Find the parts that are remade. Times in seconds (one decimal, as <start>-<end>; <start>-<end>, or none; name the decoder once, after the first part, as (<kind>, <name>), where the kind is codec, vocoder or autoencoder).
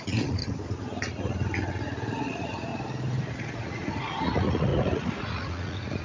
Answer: 0.0-0.4 (vocoder, Vocos); 1.7-2.7; 3.3-6.0